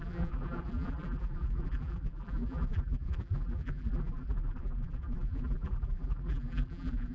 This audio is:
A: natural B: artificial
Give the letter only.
B